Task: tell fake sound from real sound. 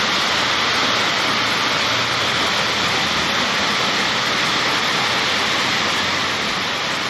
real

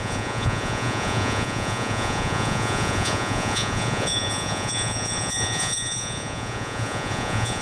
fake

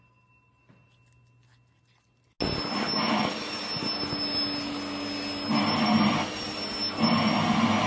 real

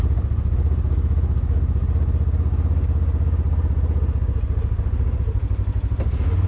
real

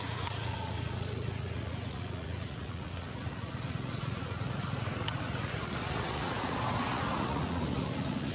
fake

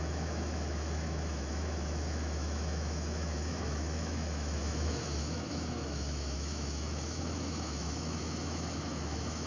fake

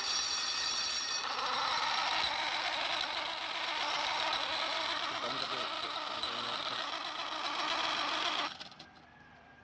real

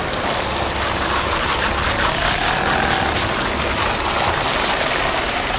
real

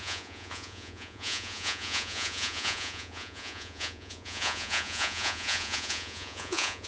fake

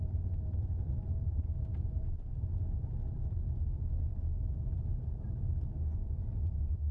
fake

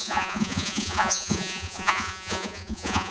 fake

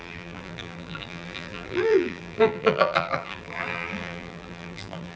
fake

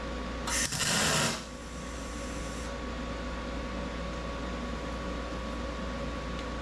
real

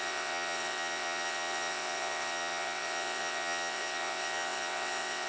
fake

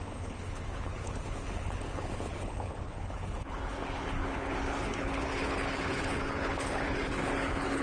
fake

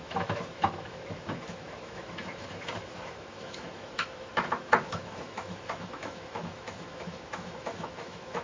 fake